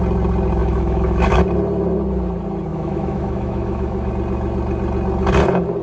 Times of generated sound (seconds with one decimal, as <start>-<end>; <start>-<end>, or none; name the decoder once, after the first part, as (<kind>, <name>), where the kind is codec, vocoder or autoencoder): 0.6-1.4 (autoencoder, DAC-VAE); 2.7-4.1